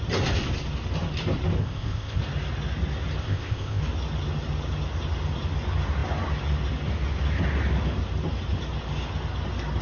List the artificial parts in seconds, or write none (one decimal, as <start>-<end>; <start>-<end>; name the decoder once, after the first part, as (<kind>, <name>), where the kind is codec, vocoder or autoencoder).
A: 1.6-2.2 (codec, ZipCodec); 3.2-3.8